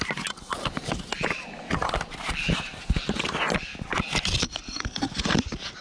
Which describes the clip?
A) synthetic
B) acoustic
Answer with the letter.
B